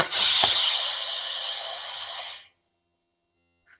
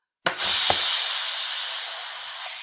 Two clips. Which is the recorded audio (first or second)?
second